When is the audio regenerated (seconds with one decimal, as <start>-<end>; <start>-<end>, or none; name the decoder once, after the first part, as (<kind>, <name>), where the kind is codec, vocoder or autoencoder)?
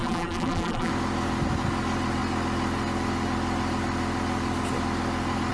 0.0-0.9 (vocoder, BigVGAN v2)